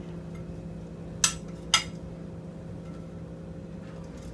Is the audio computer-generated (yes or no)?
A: no